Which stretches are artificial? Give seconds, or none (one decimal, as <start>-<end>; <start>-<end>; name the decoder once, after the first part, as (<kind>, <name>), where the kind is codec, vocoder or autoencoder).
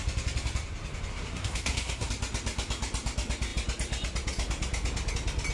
1.1-2.1 (codec, SNAC)